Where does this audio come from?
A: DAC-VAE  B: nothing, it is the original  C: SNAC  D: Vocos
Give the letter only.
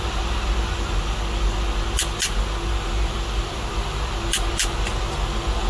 B